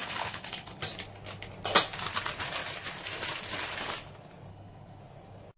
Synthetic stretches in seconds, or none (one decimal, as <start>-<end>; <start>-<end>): 0.0-0.8; 4.5-5.0